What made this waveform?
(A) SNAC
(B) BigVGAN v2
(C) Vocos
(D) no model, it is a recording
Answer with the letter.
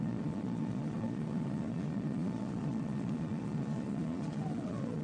C